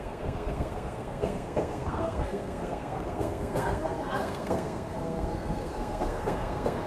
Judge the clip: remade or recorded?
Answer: remade